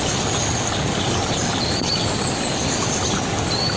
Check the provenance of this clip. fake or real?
fake